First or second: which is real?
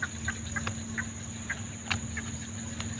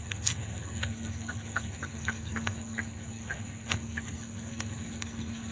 first